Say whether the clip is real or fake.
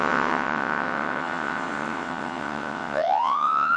fake